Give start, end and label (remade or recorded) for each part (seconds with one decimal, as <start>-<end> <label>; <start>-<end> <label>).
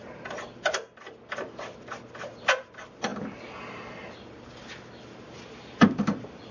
0.0-6.5 recorded